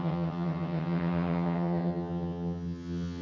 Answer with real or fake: fake